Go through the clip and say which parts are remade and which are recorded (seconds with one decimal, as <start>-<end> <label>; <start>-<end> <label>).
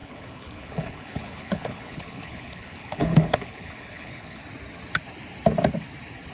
0.0-4.4 remade; 4.4-6.3 recorded